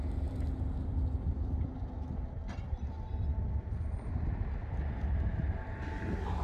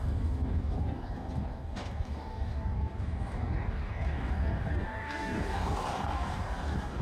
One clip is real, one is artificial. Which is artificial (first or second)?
second